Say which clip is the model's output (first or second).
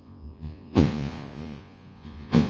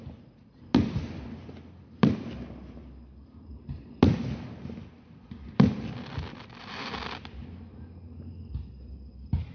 first